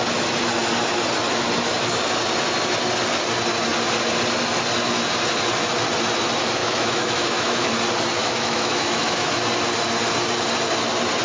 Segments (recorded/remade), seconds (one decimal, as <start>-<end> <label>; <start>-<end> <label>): 0.0-6.6 recorded; 6.6-7.7 remade; 7.7-8.2 recorded; 8.2-9.3 remade; 9.3-11.2 recorded